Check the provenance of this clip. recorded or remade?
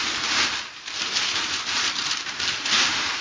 remade